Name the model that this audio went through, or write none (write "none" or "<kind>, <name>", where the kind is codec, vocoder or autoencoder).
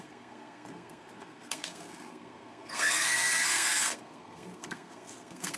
codec, SNAC